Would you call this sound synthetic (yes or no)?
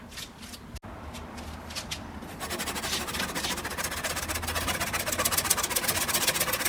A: no